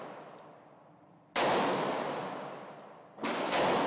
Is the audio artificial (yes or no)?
no